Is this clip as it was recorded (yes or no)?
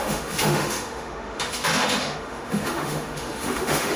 no